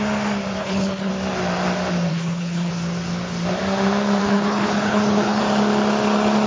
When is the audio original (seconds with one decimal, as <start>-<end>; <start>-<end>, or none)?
0.0-0.6; 1.1-2.1; 2.7-4.2; 5.4-6.5